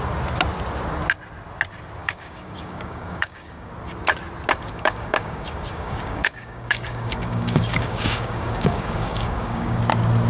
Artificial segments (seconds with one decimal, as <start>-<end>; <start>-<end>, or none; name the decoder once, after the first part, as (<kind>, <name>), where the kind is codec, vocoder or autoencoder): 2.0-3.7 (codec, DAC); 4.7-9.8